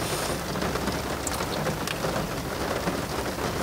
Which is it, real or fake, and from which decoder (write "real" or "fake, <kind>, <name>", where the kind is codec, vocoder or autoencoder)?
real